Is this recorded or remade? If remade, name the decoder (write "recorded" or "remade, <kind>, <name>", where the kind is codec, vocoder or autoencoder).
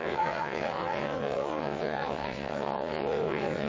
remade, vocoder, WaveNeXt